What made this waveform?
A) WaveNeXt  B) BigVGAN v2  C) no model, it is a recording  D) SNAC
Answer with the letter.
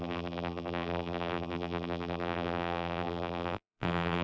B